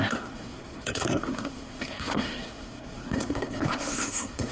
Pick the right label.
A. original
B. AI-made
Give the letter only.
B